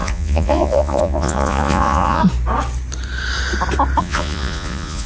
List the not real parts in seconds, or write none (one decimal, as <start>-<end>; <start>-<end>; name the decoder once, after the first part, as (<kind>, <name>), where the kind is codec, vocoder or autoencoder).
0.0-2.2 (vocoder, Vocos); 4.0-5.1